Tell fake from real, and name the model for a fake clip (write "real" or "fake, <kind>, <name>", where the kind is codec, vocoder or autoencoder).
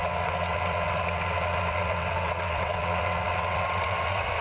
fake, vocoder, WaveNeXt